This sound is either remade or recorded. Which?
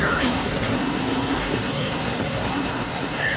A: remade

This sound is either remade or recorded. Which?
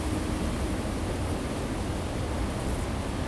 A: recorded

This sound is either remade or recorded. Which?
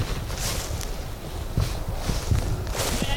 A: recorded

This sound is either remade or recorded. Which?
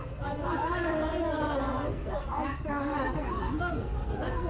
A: remade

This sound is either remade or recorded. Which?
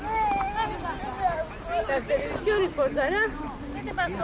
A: recorded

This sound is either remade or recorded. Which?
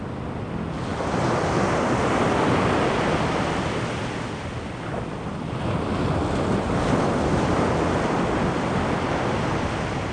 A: recorded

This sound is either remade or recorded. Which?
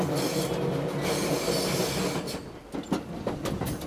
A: recorded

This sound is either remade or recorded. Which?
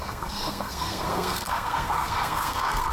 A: remade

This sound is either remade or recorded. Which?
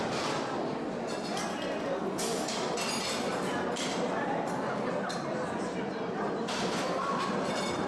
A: recorded